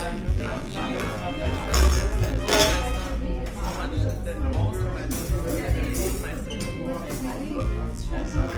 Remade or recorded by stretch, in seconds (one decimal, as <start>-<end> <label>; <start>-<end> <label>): 0.0-2.6 remade; 2.6-7.5 recorded; 7.5-8.6 remade